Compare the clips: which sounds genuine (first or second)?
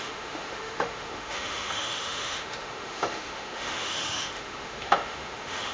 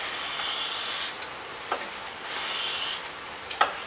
second